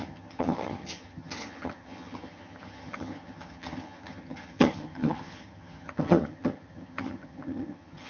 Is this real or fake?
fake